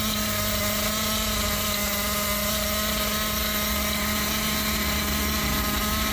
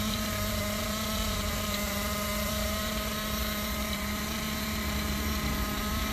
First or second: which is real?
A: first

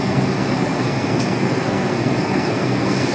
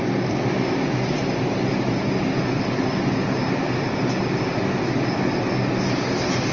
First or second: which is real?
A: second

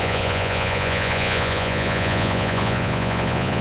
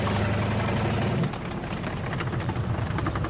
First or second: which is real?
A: second